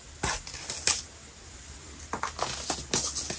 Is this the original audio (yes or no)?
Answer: yes